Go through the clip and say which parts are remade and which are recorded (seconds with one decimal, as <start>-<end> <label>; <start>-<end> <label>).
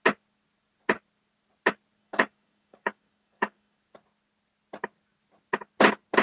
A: 0.0-2.0 recorded; 2.0-3.8 remade; 3.8-6.2 recorded